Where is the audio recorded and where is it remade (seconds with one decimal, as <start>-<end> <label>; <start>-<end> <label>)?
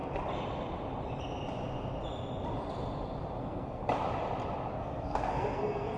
0.0-3.4 recorded; 3.4-3.8 remade; 3.8-4.7 recorded; 4.7-6.0 remade